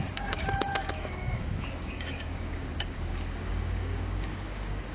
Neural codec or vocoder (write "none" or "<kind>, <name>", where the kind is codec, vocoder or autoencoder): codec, DAC